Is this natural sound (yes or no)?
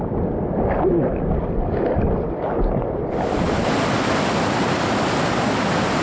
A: yes